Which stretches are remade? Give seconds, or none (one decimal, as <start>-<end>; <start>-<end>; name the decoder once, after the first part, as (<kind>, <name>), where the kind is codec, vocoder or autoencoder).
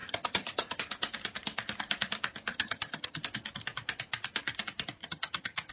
0.0-0.8 (vocoder, HiFi-GAN); 2.5-3.2; 5.0-5.7